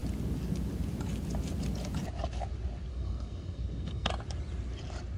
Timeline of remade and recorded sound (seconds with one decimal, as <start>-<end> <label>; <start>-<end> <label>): 0.0-2.9 recorded; 2.9-4.1 remade; 4.1-5.2 recorded